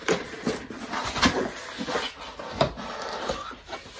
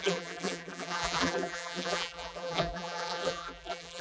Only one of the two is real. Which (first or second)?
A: first